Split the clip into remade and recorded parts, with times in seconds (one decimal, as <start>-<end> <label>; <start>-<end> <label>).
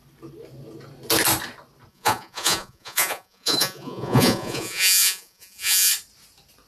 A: 0.0-1.9 recorded; 1.9-5.9 remade; 5.9-6.7 recorded